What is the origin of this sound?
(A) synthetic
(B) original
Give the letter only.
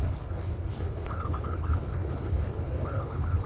A